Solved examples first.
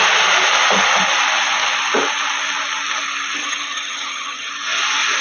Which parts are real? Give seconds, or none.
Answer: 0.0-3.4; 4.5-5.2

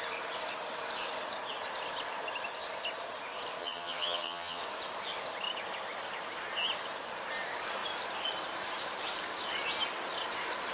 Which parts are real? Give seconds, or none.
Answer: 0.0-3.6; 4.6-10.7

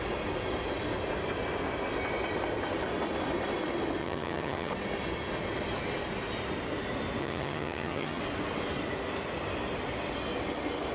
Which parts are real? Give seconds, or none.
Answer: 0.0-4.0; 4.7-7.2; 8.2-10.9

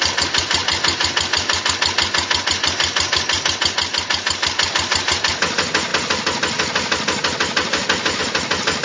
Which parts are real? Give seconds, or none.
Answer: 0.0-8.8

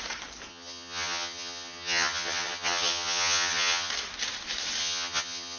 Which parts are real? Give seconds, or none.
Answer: 0.0-0.5; 3.9-4.8

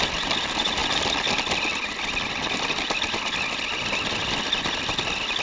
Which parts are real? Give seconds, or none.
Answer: 0.0-5.4